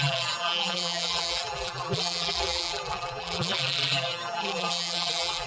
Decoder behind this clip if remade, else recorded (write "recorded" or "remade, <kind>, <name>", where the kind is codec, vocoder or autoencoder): remade, vocoder, BigVGAN v2